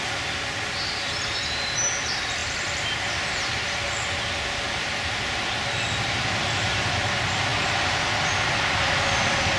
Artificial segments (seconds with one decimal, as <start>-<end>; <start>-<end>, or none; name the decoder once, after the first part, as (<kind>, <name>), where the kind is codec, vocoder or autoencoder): 2.4-3.4 (vocoder, BigVGAN v2)